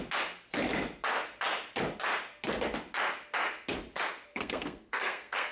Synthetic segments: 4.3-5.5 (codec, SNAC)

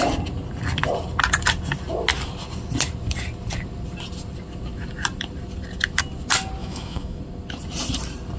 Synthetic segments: 6.6-7.2 (autoencoder, DAC-VAE)

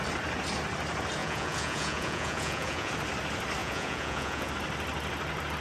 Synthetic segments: 1.2-2.9 (vocoder, Vocos); 3.6-4.5

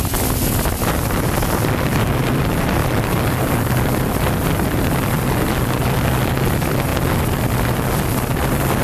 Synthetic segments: 2.8-4.3 (vocoder, BigVGAN v2)

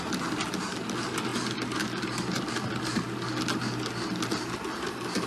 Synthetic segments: none

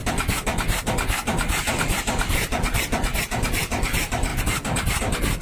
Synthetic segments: 3.2-4.3 (vocoder, BigVGAN v2); 5.0-5.4